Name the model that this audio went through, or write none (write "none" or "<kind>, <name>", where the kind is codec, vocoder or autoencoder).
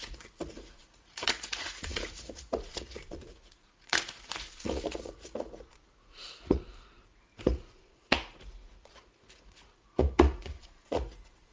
vocoder, Vocos